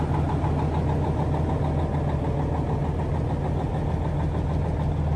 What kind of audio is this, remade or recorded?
recorded